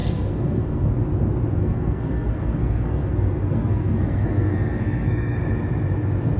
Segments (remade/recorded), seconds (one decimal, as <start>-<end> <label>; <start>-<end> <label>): 0.0-0.9 remade; 0.9-1.6 recorded; 1.6-5.4 remade; 5.4-6.4 recorded